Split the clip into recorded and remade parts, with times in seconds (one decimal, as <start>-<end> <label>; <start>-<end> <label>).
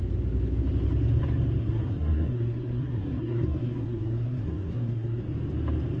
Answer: 0.0-1.6 recorded; 1.6-5.2 remade; 5.2-6.0 recorded